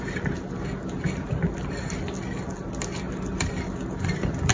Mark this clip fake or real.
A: real